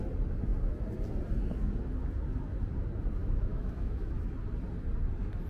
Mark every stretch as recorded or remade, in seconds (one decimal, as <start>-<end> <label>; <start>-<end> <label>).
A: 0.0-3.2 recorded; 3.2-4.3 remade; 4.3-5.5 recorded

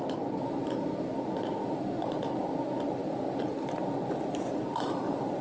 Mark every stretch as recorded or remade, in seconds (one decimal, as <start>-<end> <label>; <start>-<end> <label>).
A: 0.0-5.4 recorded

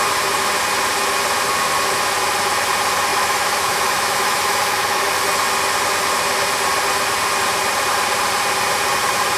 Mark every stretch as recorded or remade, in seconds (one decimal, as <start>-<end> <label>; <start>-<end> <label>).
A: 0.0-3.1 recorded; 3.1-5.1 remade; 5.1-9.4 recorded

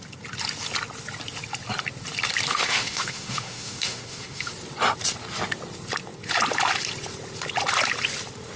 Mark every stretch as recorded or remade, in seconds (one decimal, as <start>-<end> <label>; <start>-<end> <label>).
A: 0.0-2.5 recorded; 2.5-4.5 remade; 4.5-8.6 recorded